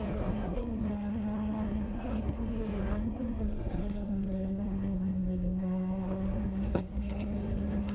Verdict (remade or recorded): remade